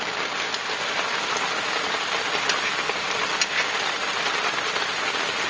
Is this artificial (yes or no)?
no